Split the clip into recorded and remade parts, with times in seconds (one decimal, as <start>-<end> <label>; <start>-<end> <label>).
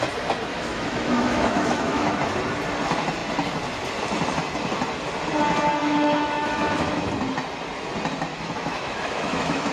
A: 0.0-0.5 recorded; 0.5-2.2 remade; 2.2-5.8 recorded; 5.8-7.1 remade; 7.1-8.3 recorded; 8.3-9.7 remade